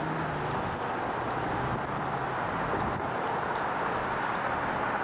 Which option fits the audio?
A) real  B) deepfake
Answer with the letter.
A